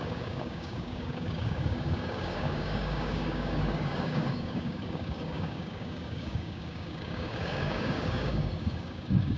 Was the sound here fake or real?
fake